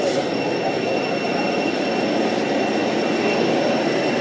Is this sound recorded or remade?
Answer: recorded